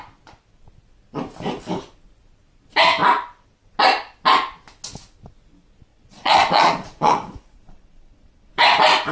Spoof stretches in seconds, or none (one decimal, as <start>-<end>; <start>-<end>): 5.9-8.5